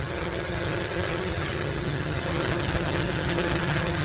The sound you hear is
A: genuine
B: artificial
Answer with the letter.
B